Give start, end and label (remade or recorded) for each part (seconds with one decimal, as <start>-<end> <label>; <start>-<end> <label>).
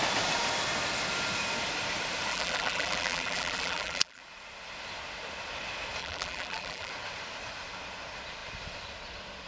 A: 0.0-2.3 recorded; 2.3-4.2 remade; 4.2-6.0 recorded; 6.0-6.9 remade; 6.9-9.5 recorded